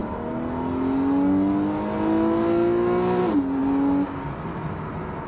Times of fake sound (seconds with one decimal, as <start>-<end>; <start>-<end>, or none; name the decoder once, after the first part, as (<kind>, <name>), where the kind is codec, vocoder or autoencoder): none